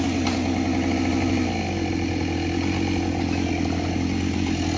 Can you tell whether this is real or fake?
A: real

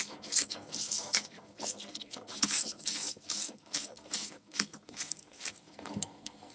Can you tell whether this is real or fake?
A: fake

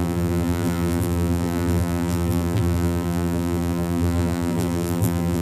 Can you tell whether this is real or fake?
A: fake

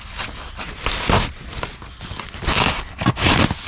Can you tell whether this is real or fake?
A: real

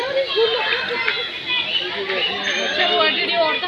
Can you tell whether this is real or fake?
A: real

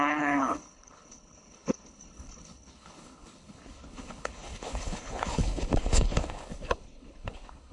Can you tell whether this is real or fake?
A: fake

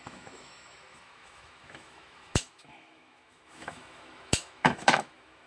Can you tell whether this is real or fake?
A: fake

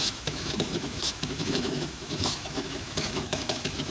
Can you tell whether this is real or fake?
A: fake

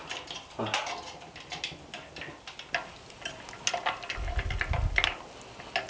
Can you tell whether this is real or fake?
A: real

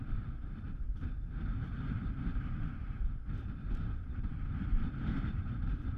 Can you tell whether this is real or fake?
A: real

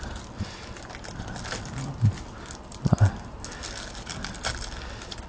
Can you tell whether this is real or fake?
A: real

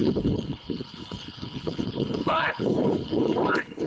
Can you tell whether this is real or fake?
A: fake